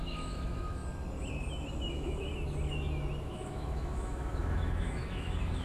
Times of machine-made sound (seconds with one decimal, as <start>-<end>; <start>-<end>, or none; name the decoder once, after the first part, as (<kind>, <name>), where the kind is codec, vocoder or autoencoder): 0.0-0.8 (autoencoder, DAC-VAE); 1.9-2.3; 3.2-5.6